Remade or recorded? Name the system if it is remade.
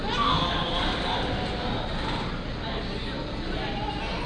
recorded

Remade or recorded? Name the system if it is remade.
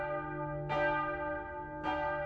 recorded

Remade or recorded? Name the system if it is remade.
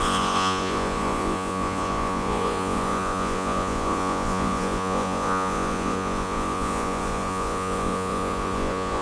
remade, vocoder, Vocos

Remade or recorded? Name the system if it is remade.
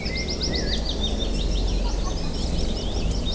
recorded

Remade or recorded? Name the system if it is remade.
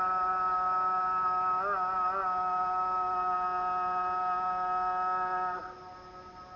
recorded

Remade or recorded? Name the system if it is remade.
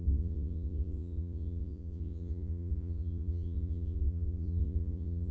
remade, vocoder, Vocos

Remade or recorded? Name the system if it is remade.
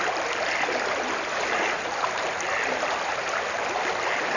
recorded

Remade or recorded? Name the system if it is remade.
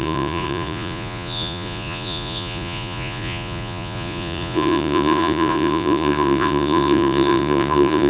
remade, vocoder, Vocos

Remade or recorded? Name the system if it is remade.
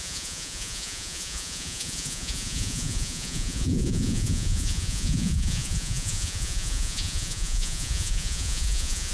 remade, vocoder, Vocos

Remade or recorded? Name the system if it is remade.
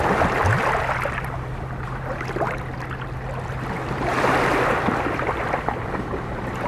recorded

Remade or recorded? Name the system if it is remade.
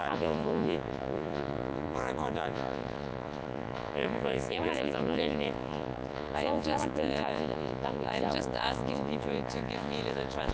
remade, vocoder, Vocos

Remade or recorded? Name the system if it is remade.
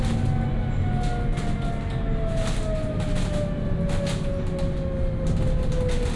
recorded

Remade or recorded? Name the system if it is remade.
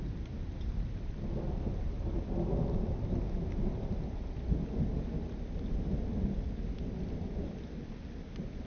recorded